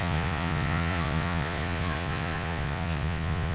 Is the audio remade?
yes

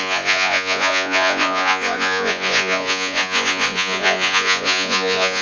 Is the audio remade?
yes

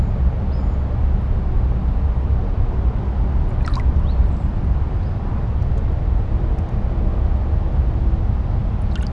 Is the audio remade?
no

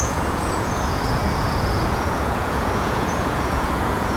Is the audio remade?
yes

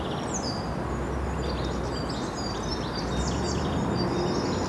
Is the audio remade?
no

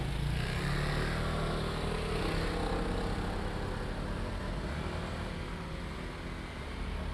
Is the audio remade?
no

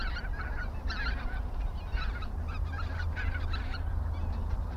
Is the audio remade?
no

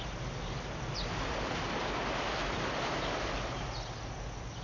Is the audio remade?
no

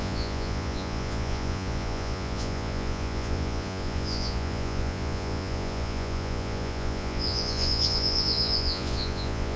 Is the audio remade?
yes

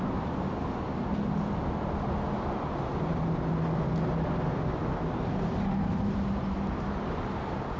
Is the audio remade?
no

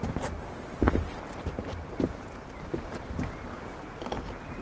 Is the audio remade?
no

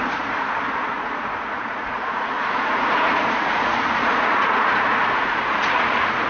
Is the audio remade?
yes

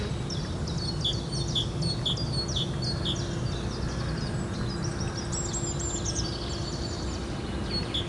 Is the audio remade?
no